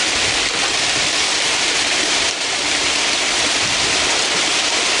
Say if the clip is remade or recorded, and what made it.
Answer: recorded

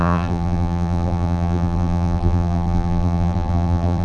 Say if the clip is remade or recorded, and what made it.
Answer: remade, vocoder, BigVGAN v2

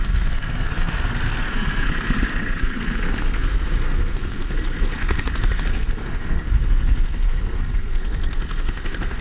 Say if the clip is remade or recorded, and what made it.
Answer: remade, codec, SNAC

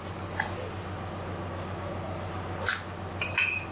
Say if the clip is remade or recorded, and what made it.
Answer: recorded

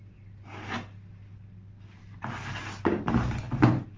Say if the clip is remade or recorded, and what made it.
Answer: recorded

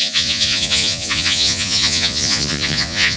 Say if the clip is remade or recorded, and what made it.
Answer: remade, vocoder, Vocos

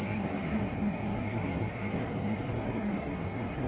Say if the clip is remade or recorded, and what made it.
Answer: remade, codec, SNAC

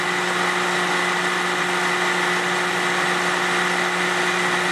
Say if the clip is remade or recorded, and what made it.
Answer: recorded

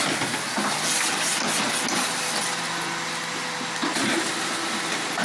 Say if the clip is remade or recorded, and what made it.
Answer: recorded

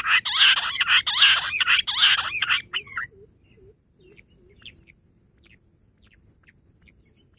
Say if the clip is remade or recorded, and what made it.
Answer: recorded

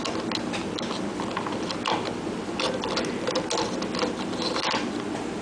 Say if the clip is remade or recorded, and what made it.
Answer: recorded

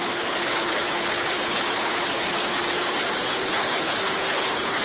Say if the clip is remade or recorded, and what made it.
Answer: remade, codec, HILCodec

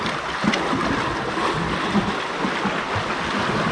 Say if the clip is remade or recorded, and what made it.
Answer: recorded